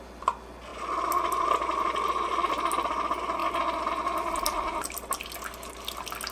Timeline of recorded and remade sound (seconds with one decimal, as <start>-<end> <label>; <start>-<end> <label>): 0.0-6.3 recorded